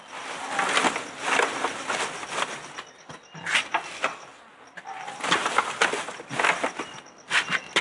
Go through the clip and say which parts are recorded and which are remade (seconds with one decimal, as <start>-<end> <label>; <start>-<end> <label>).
0.0-7.8 recorded